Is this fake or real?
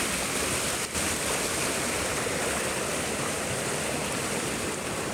real